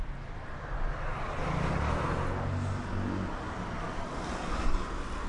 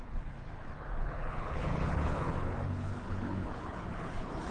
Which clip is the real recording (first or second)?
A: first